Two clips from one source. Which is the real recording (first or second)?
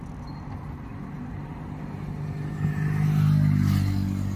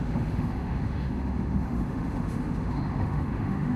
first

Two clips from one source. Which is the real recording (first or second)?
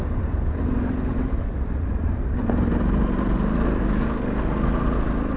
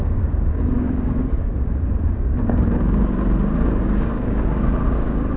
first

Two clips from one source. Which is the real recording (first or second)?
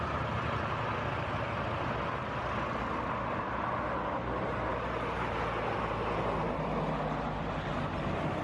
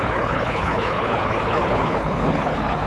first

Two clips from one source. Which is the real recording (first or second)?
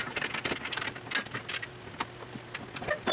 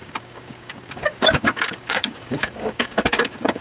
first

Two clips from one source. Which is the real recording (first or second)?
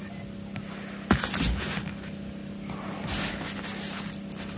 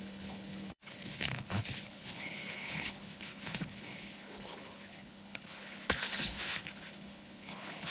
first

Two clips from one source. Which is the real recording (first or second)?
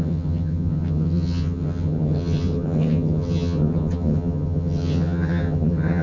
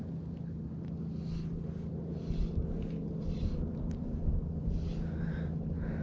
second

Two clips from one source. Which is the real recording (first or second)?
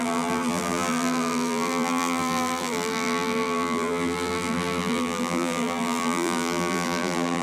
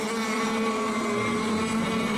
second